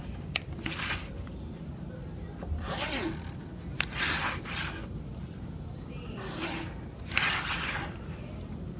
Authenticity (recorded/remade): recorded